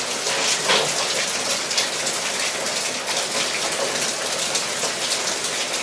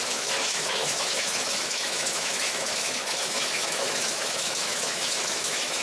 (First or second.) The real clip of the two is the first